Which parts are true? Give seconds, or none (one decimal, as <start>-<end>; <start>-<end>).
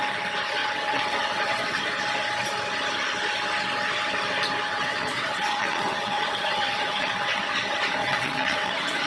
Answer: 0.0-0.6; 1.8-4.7; 7.4-8.0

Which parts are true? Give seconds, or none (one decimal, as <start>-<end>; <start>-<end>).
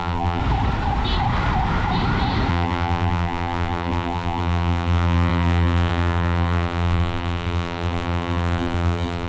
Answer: 0.4-2.5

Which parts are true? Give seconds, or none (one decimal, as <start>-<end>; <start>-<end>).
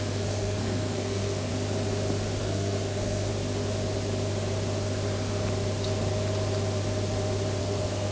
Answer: 1.5-2.4; 3.3-7.6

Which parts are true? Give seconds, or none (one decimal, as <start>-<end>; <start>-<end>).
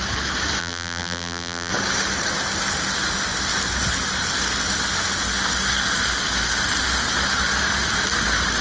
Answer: 0.0-0.6; 1.7-8.6